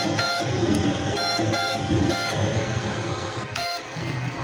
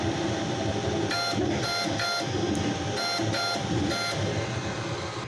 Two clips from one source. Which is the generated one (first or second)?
first